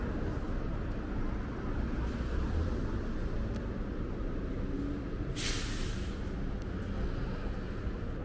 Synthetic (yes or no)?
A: no